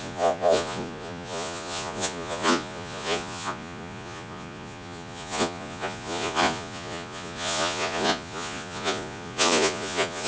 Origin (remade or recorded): remade